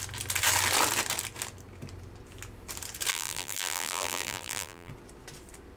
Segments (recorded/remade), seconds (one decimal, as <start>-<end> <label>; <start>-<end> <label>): 0.0-3.1 recorded; 3.1-4.9 remade; 4.9-5.8 recorded